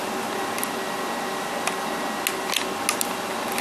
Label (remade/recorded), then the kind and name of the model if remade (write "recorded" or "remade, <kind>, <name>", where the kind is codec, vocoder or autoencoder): recorded